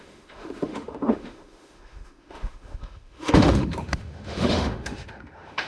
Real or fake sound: fake